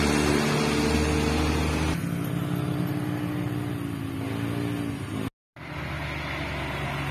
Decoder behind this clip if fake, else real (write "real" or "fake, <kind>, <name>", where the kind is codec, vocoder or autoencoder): real